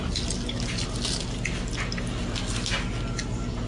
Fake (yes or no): no